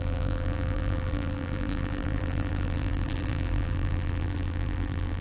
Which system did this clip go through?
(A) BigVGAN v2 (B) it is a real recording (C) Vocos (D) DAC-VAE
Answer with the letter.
A